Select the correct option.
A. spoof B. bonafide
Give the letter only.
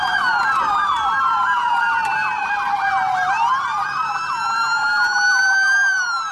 A